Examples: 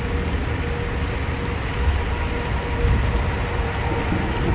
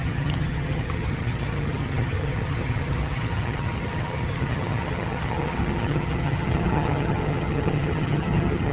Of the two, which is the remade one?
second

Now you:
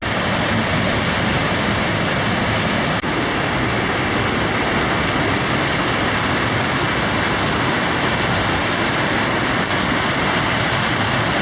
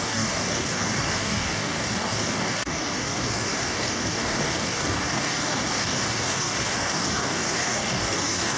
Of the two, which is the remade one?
second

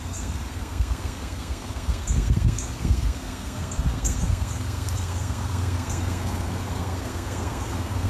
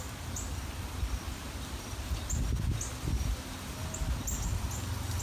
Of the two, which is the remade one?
first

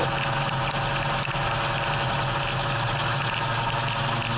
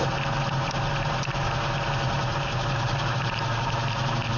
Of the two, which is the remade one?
second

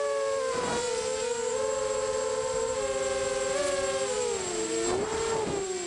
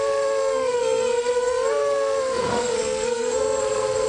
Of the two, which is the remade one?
second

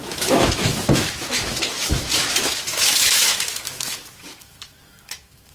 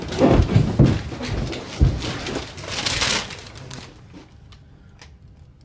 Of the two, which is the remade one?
first